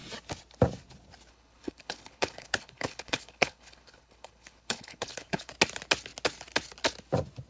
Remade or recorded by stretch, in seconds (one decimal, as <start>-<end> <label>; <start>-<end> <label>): 0.0-1.3 recorded; 1.3-5.5 remade; 5.5-7.5 recorded